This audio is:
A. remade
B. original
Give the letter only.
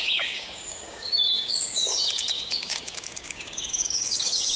A